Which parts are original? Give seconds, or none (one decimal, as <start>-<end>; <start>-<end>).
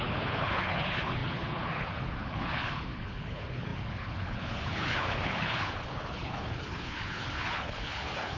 none